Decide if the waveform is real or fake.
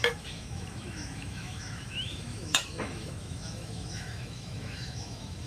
fake